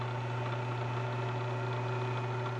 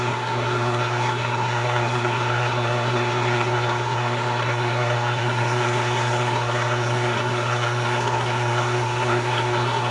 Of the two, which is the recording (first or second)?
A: first